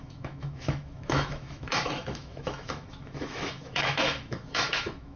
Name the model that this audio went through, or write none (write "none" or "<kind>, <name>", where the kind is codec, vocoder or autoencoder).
autoencoder, DAC-VAE